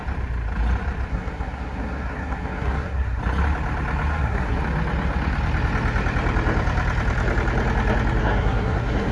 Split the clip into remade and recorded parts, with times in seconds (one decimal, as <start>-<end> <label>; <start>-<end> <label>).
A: 0.0-1.1 recorded; 1.1-3.2 remade; 3.2-4.1 recorded; 4.1-4.6 remade; 4.6-8.2 recorded; 8.2-9.1 remade